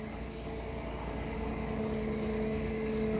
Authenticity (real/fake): fake